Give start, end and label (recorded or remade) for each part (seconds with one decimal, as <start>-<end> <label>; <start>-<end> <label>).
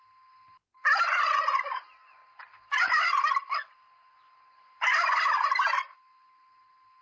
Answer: 0.0-7.0 recorded